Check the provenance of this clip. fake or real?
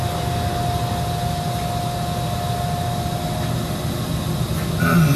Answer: real